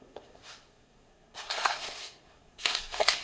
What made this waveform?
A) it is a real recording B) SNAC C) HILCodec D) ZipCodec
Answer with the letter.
B